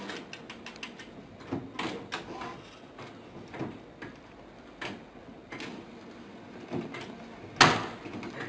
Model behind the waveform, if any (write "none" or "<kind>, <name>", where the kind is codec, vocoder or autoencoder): none